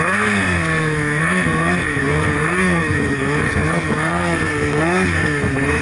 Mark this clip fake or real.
fake